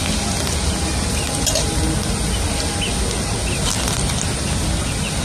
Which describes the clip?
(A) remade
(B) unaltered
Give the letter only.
B